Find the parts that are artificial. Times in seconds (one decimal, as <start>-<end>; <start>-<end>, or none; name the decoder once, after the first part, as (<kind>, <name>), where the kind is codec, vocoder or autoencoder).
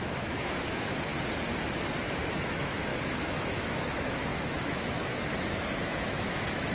0.0-1.1 (autoencoder, DAC-VAE); 2.2-6.7